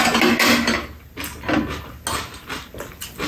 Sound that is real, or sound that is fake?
real